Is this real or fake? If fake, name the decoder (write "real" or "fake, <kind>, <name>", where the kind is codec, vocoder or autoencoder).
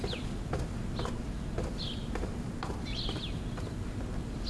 real